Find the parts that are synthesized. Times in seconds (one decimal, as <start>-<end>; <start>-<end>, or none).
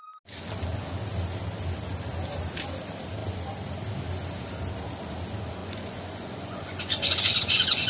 5.6-7.9